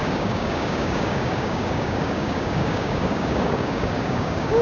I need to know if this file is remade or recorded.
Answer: remade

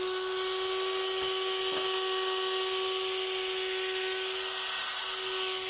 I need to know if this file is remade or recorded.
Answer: recorded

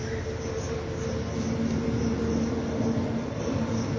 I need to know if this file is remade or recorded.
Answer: recorded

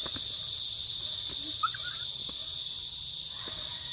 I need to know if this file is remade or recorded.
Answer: recorded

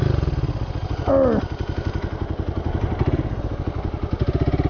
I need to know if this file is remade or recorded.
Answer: recorded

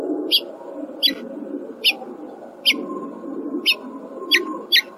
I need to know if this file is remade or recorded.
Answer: recorded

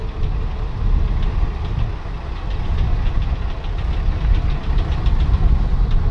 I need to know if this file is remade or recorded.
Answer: recorded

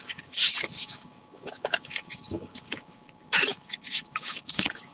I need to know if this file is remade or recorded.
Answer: remade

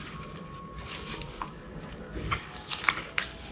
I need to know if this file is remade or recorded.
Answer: remade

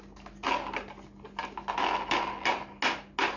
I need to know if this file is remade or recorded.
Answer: recorded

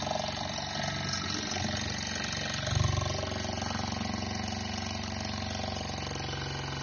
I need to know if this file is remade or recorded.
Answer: recorded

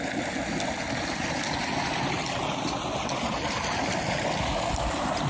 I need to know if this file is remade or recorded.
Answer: recorded